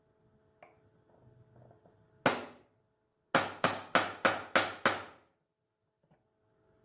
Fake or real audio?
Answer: real